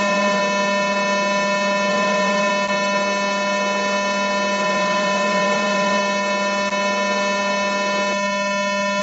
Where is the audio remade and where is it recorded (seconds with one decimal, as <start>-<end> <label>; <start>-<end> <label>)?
0.0-0.4 remade; 0.4-1.9 recorded; 1.9-2.5 remade; 2.5-4.6 recorded; 4.6-6.0 remade; 6.0-9.0 recorded